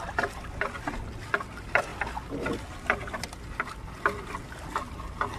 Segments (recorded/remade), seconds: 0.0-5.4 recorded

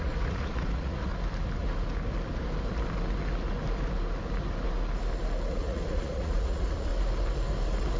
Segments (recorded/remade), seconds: 0.0-1.1 remade; 1.1-5.5 recorded; 5.5-6.9 remade; 6.9-8.0 recorded

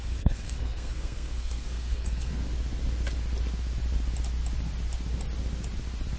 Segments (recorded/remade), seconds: 0.0-2.3 remade; 2.3-6.2 recorded

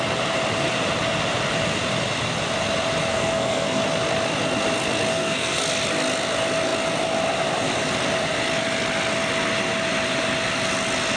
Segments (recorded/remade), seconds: 0.0-3.1 recorded; 3.1-3.8 remade; 3.8-5.1 recorded; 5.1-5.6 remade; 5.6-11.2 recorded

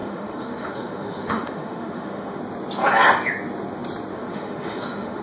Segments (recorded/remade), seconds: 0.0-2.4 remade; 2.4-4.1 recorded; 4.1-5.2 remade

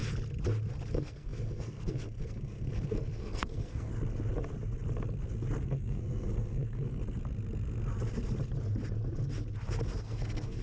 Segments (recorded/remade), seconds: 0.0-0.9 recorded; 0.9-3.9 remade; 3.9-5.6 recorded; 5.6-7.0 remade; 7.0-10.0 recorded; 10.0-10.6 remade